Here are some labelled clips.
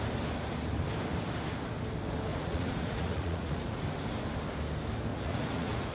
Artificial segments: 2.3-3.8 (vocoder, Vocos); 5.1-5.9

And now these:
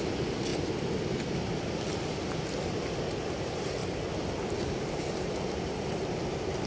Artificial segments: 0.0-0.5 (vocoder, BigVGAN v2); 3.4-3.8; 4.5-6.7

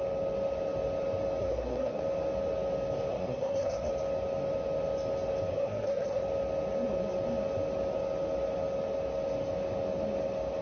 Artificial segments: 1.4-2.0 (codec, SNAC); 3.1-3.9; 5.5-6.2

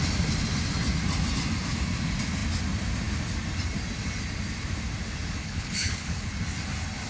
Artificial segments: 5.4-6.3 (codec, HILCodec)

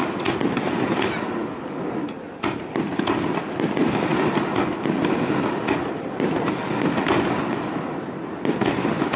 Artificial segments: none

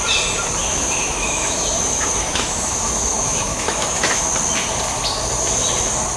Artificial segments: 0.6-4.3 (autoencoder, DAC-VAE)